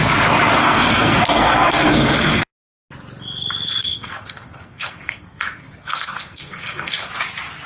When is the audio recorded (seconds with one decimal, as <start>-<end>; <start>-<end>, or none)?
0.0-0.6; 2.5-3.8; 7.1-7.7